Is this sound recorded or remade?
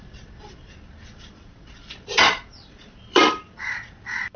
remade